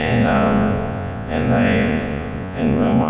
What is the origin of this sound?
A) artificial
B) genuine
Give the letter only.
A